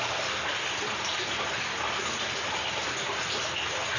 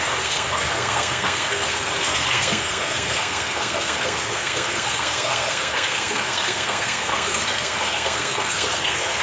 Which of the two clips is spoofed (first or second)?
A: second